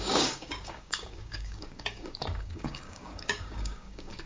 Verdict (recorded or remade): remade